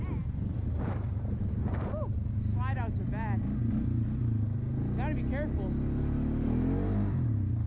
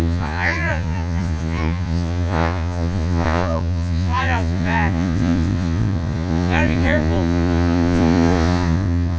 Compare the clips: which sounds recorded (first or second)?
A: first